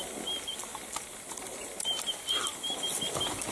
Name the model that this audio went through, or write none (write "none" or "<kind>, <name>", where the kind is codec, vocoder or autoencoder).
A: none